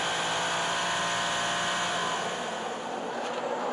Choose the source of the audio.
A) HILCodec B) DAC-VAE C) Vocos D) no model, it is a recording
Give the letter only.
D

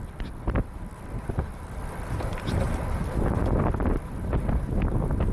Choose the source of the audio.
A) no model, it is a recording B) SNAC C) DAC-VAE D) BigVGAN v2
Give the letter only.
A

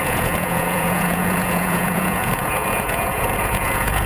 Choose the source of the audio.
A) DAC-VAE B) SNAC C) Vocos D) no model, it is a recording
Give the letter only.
C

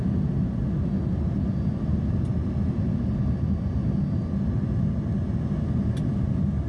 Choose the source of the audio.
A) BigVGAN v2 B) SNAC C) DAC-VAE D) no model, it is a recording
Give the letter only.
D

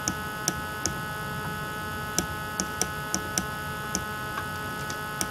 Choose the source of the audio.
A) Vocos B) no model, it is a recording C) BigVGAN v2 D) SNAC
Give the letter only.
B